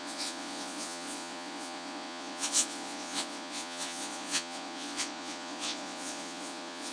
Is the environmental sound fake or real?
fake